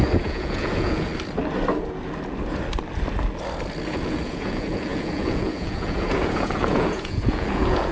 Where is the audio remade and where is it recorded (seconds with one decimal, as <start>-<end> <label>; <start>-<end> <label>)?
0.0-1.1 remade; 1.1-3.9 recorded; 3.9-7.9 remade